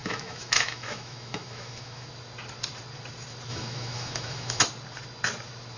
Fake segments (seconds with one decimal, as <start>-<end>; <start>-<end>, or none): 0.0-2.1; 3.5-4.6